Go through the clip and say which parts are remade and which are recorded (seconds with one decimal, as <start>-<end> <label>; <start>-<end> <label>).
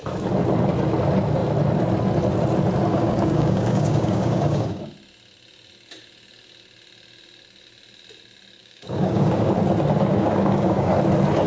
0.0-2.9 recorded; 2.9-4.8 remade; 4.8-8.6 recorded; 8.6-9.5 remade; 9.5-10.1 recorded; 10.1-10.9 remade; 10.9-11.5 recorded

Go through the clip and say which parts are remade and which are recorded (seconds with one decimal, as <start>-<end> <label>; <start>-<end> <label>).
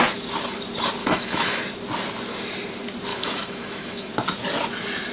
0.0-1.0 recorded; 1.0-1.6 remade; 1.6-3.1 recorded; 3.1-4.1 remade; 4.1-5.1 recorded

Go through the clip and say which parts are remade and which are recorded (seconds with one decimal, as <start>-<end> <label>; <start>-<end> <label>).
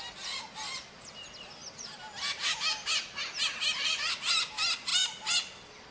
0.0-5.9 recorded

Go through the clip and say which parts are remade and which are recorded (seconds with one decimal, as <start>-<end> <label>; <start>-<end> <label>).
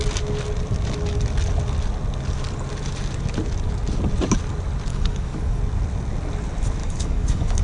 0.0-4.9 recorded; 4.9-5.6 remade; 5.6-6.8 recorded; 6.8-7.6 remade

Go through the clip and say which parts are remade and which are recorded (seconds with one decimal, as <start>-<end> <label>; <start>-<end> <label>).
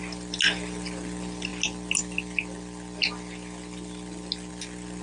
0.0-5.0 recorded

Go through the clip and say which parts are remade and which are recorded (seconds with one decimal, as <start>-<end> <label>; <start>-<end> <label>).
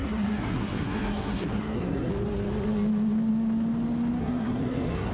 0.0-2.1 remade; 2.1-4.2 recorded; 4.2-5.1 remade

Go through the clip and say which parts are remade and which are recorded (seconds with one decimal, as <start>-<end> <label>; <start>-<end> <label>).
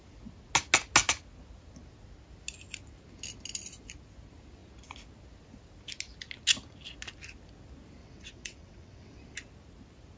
0.0-8.0 recorded; 8.0-9.2 remade; 9.2-10.2 recorded